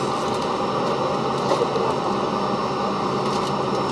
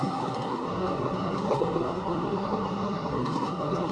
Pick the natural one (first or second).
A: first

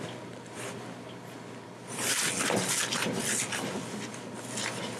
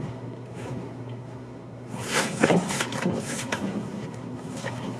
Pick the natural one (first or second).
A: first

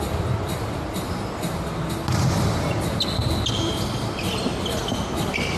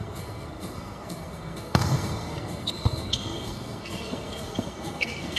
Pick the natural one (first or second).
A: first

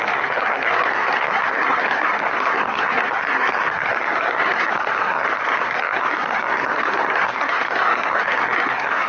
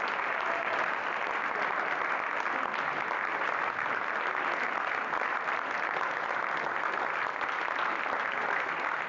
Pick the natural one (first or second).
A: second